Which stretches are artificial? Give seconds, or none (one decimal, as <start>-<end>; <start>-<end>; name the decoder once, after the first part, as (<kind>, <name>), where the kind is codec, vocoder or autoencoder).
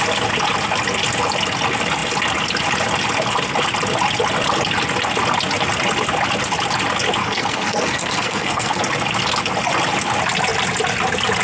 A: 7.2-8.8 (codec, SNAC)